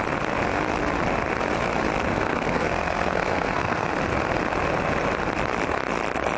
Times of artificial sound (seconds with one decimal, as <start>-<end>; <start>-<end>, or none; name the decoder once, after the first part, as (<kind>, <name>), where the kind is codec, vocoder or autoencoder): 2.1-3.9 (codec, SNAC)